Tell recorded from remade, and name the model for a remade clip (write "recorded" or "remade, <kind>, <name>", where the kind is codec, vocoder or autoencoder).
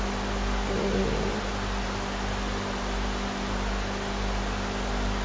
recorded